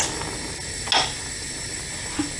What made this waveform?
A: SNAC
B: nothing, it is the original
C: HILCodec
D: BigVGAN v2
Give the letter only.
B